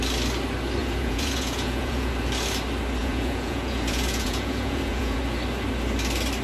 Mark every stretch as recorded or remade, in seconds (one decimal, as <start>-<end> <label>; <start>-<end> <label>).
0.0-0.8 recorded; 0.8-2.1 remade; 2.1-3.0 recorded; 3.0-5.2 remade; 5.2-6.4 recorded